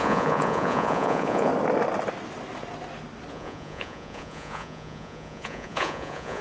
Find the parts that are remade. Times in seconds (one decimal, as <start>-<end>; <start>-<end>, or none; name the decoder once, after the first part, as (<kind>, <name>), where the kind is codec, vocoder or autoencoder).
0.0-1.5 (vocoder, Vocos); 3.3-6.4